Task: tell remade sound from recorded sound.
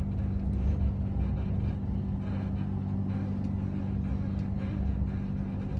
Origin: recorded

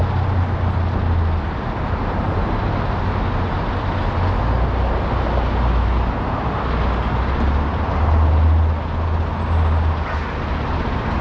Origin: recorded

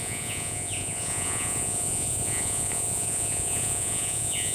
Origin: remade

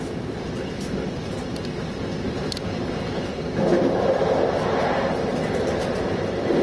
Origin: recorded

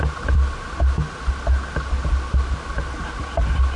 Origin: recorded